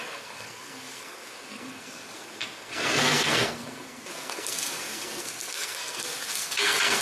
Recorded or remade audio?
remade